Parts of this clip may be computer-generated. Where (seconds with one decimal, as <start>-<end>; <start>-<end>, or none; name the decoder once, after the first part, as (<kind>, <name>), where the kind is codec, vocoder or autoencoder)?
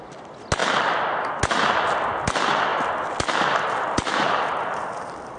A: none